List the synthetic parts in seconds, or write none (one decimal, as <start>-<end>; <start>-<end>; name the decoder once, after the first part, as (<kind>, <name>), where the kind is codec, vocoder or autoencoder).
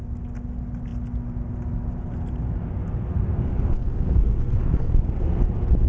3.1-5.4 (codec, SNAC)